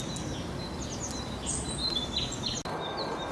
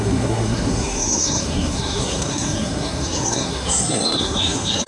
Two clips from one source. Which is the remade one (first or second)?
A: second